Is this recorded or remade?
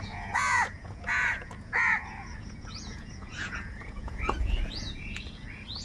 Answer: remade